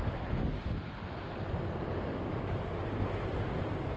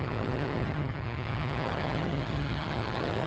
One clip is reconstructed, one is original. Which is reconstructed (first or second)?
second